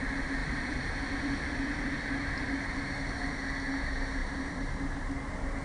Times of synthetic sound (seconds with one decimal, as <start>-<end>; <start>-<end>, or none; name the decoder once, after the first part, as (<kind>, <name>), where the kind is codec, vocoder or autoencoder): 0.4-1.5 (vocoder, BigVGAN v2); 4.2-5.1